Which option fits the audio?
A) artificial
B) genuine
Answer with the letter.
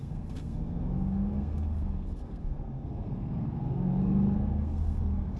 A